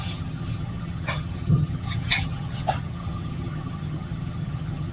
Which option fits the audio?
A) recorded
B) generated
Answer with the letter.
B